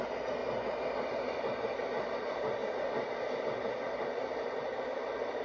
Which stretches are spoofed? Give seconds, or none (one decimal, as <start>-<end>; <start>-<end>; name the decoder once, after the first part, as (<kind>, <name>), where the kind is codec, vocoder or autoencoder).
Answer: 0.0-0.4 (vocoder, BigVGAN v2); 1.0-2.6; 4.0-5.4